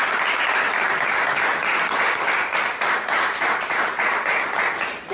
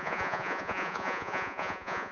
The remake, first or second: second